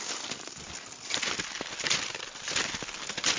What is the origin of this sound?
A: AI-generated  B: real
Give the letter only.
B